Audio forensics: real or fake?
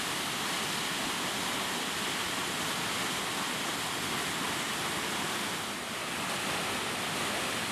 real